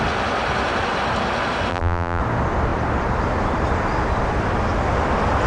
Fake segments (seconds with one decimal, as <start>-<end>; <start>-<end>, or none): 1.7-2.2